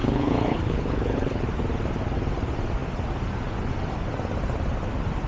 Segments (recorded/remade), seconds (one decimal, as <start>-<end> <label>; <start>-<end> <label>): 0.0-1.4 remade; 1.4-5.3 recorded

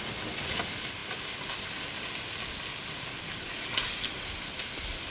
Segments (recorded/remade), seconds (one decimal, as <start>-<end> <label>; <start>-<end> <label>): 0.0-5.1 recorded